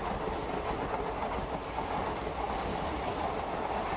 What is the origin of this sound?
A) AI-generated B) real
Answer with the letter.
B